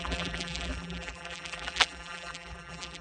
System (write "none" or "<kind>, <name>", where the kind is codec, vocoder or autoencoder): vocoder, BigVGAN v2